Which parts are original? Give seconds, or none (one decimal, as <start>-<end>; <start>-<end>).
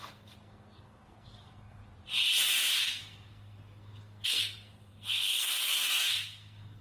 1.8-2.8